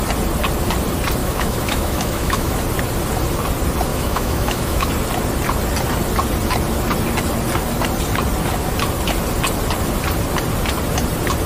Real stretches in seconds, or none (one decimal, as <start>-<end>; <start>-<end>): 0.0-1.2; 2.6-3.9; 4.9-11.5